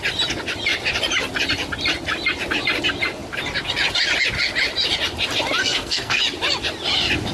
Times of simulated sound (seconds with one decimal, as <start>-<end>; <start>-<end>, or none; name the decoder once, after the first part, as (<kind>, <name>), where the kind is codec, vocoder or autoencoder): 5.6-6.2 (codec, SNAC)